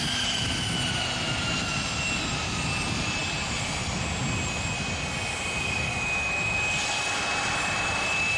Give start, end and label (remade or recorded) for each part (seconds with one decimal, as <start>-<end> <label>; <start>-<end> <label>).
0.0-8.4 recorded